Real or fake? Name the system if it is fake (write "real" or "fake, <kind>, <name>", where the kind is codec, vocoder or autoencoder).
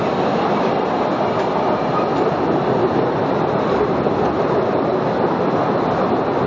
real